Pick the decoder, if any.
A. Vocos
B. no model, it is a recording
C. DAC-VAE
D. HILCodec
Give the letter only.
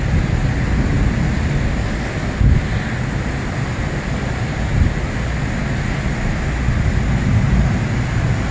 B